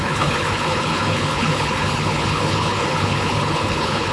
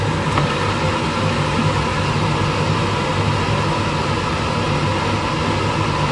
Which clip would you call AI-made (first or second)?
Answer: first